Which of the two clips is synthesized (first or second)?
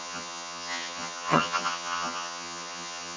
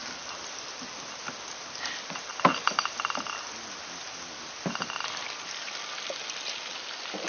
first